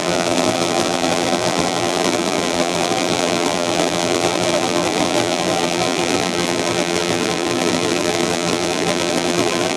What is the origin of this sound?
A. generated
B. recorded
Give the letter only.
A